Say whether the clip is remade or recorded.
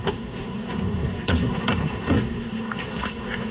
remade